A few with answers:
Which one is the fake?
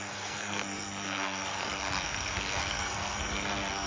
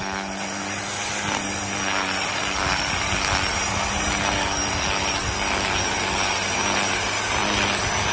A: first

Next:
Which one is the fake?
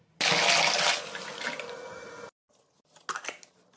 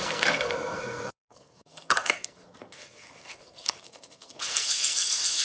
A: second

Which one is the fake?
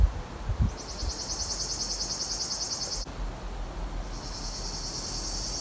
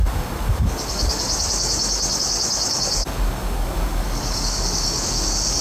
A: second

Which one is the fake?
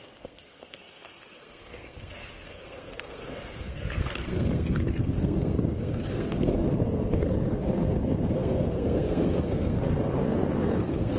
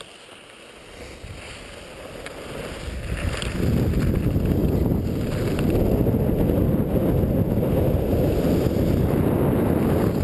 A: first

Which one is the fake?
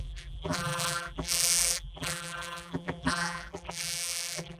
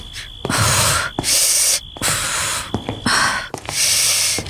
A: first